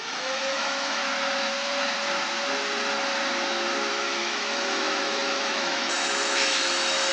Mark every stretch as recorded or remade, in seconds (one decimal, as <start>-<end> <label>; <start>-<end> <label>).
0.0-1.0 remade; 1.0-3.9 recorded; 3.9-7.1 remade